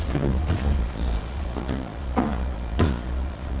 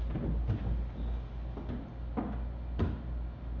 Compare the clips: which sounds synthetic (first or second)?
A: first